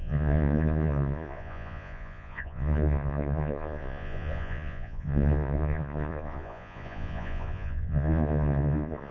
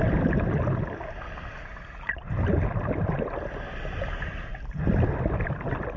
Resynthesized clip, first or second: first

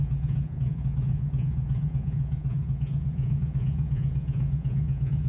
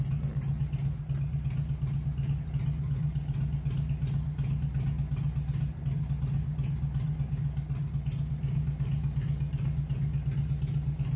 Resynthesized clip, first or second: first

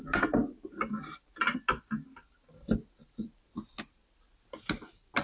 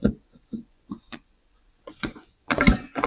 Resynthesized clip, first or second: second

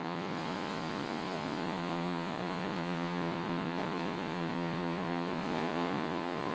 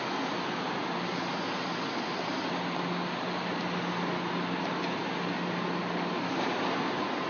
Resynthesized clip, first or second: first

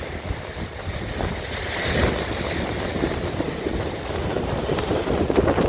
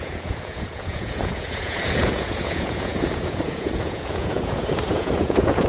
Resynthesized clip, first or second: second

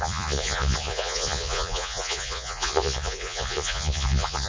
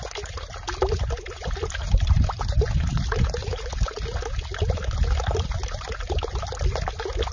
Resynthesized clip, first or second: first